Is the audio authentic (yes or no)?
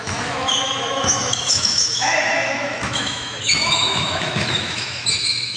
no